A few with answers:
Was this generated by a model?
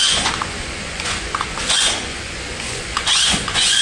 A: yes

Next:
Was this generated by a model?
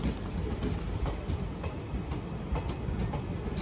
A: no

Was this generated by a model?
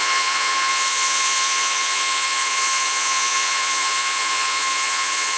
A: yes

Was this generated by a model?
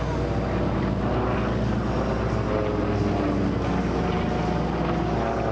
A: no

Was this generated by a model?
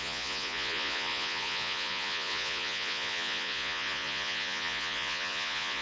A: yes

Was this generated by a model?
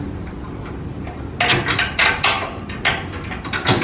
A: no